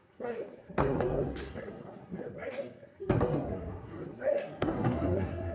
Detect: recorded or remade remade